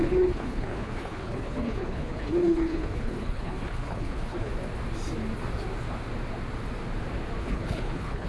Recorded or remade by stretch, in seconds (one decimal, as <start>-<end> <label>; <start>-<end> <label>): 0.0-4.5 remade; 4.5-7.4 recorded; 7.4-8.3 remade